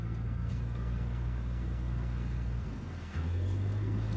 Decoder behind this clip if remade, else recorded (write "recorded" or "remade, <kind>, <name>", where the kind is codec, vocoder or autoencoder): remade, codec, SNAC